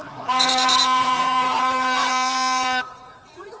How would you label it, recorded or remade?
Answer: remade